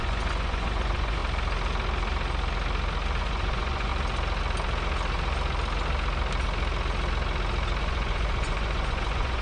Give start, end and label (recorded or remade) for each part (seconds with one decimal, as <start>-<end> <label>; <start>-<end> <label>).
0.0-1.2 remade; 1.2-3.2 recorded; 3.2-3.9 remade; 3.9-7.8 recorded; 7.8-9.4 remade